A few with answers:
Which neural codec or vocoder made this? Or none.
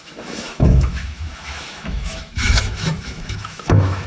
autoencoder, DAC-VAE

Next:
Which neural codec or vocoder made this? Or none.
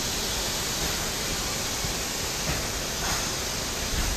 none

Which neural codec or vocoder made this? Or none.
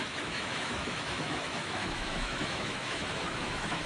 autoencoder, DAC-VAE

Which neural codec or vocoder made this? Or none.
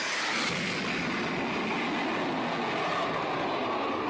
none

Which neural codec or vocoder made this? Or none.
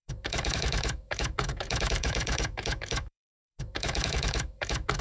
autoencoder, DAC-VAE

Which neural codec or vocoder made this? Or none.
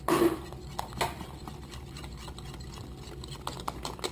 none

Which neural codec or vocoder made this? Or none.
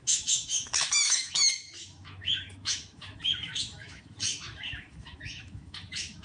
autoencoder, DAC-VAE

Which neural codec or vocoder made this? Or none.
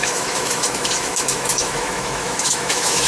autoencoder, DAC-VAE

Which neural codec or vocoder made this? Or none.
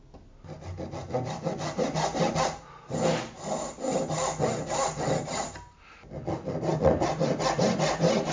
none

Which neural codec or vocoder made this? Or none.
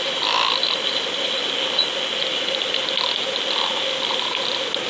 none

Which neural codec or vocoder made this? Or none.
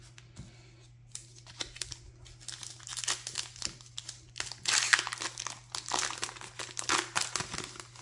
none